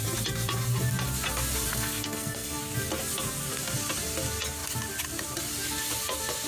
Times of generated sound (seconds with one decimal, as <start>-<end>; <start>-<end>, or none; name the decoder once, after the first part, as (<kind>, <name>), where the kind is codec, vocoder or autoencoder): 1.7-2.6 (codec, SNAC)